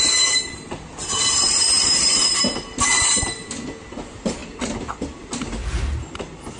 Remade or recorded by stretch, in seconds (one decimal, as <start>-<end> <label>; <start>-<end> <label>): 0.0-6.6 recorded

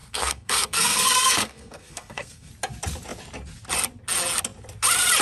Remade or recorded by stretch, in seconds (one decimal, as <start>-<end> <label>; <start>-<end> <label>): 0.0-2.5 remade; 2.5-5.2 recorded

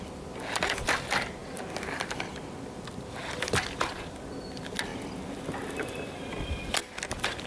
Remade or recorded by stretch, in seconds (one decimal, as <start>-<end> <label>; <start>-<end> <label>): 0.0-7.5 recorded

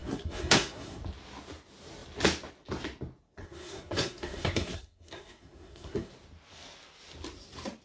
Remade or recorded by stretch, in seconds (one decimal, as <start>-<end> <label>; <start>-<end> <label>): 0.0-1.0 remade; 1.0-3.4 recorded; 3.4-6.1 remade; 6.1-7.8 recorded

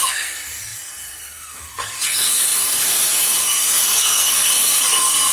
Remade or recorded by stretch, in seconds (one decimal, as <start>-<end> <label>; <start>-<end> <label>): 0.0-5.3 remade

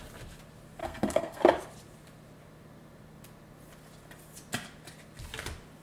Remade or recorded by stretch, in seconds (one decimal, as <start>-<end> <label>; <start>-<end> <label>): 0.0-0.8 recorded; 0.8-1.4 remade; 1.4-5.8 recorded